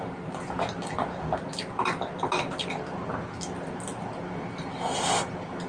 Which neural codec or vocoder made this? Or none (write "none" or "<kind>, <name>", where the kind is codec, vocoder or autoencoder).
none